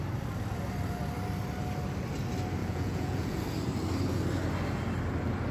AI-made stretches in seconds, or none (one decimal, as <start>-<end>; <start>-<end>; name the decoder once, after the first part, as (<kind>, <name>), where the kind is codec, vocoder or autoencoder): 2.6-3.4 (vocoder, Vocos)